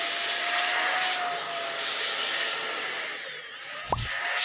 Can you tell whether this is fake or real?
real